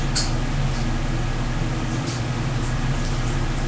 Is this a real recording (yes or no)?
yes